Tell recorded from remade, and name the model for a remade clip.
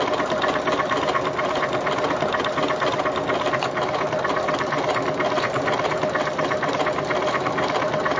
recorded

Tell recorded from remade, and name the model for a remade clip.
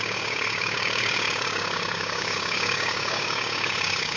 remade, codec, DAC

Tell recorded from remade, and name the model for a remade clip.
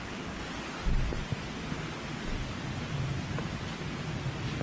recorded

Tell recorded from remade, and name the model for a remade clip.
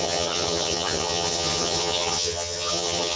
remade, vocoder, HiFi-GAN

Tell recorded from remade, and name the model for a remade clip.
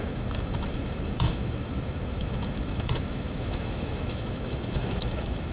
remade, autoencoder, DAC-VAE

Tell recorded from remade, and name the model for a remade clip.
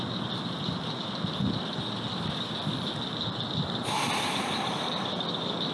remade, vocoder, BigVGAN v2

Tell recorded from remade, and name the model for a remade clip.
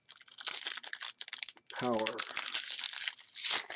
recorded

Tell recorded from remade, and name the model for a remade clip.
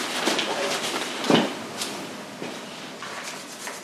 recorded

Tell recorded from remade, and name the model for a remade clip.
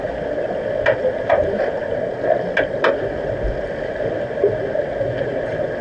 recorded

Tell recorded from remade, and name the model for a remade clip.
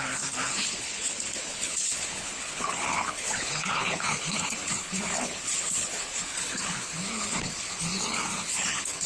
remade, codec, HILCodec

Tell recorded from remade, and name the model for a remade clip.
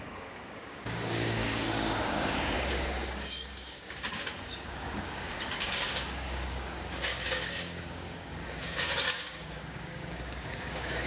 remade, codec, DAC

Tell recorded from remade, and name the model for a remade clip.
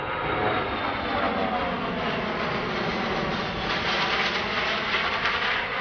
recorded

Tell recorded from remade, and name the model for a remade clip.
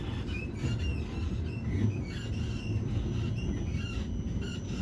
recorded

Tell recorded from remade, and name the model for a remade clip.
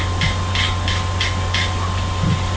recorded